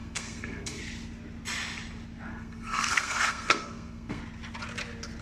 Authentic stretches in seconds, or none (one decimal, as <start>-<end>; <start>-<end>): 0.8-2.3; 4.2-5.2